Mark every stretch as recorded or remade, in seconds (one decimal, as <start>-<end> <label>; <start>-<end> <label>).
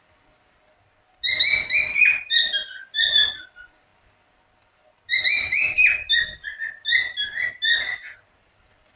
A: 0.0-9.0 recorded